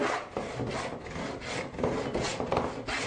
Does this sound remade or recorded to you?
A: recorded